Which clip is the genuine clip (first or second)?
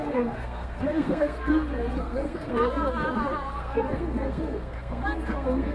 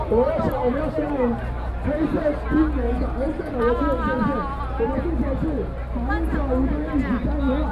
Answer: second